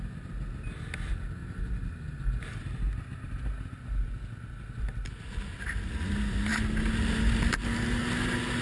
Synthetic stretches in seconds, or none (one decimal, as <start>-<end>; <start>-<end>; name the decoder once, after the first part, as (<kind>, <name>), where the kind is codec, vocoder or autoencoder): none